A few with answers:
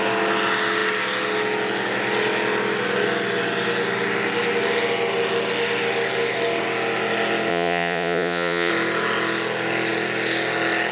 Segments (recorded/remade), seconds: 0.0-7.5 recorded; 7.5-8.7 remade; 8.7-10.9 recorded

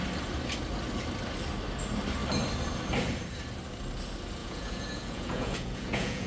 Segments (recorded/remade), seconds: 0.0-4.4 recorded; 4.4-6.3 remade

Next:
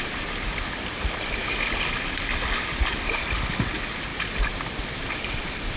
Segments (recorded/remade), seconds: 0.0-5.8 recorded

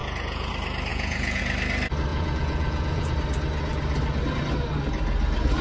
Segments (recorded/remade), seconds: 0.0-0.5 remade; 0.5-0.9 recorded; 0.9-1.4 remade; 1.4-2.1 recorded; 2.1-3.1 remade; 3.1-5.6 recorded